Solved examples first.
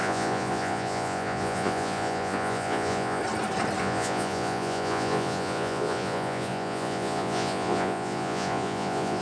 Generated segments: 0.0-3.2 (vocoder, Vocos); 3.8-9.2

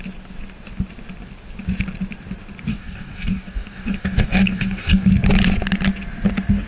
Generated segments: 2.7-5.1 (codec, DAC)

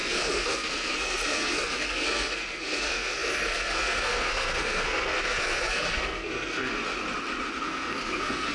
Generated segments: 0.0-6.8 (codec, SNAC); 7.6-8.5

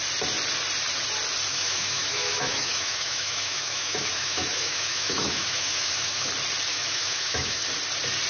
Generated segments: 1.5-6.3 (autoencoder, DAC-VAE); 6.7-7.6

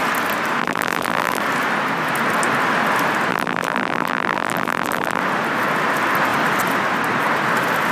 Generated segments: 0.6-1.4 (vocoder, BigVGAN v2); 3.3-5.2

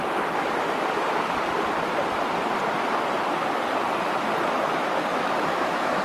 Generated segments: 5.1-6.0 (autoencoder, DAC-VAE)